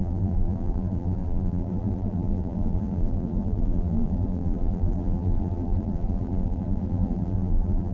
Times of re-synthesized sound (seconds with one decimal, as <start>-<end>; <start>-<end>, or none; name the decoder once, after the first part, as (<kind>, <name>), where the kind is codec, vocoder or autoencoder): 0.0-7.9 (vocoder, BigVGAN v2)